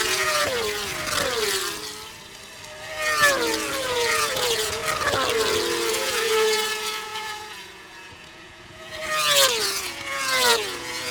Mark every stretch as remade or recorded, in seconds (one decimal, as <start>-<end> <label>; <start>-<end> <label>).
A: 0.0-0.9 remade; 0.9-3.8 recorded; 3.8-4.8 remade; 4.8-5.9 recorded; 5.9-9.0 remade; 9.0-9.6 recorded; 9.6-11.1 remade